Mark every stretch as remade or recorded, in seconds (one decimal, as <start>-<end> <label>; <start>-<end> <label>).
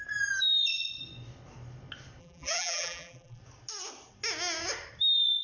0.0-2.2 recorded; 2.2-3.4 remade; 3.4-5.4 recorded